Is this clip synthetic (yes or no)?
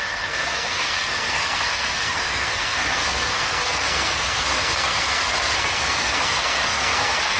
yes